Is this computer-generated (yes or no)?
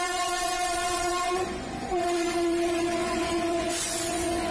yes